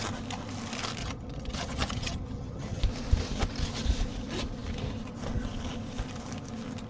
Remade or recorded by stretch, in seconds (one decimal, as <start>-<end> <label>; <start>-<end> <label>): 0.0-1.0 recorded; 1.0-2.8 remade; 2.8-6.9 recorded